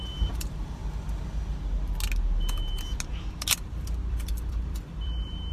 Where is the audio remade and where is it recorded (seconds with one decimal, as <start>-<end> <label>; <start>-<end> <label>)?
0.0-0.8 remade; 0.8-4.1 recorded; 4.1-5.5 remade